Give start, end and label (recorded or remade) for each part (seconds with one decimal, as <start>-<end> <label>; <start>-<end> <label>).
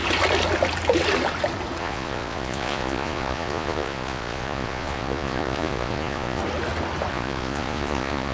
0.0-1.8 recorded; 1.8-6.4 remade; 6.4-7.1 recorded; 7.1-8.3 remade